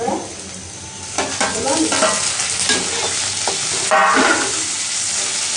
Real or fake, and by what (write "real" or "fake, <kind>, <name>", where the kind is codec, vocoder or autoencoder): real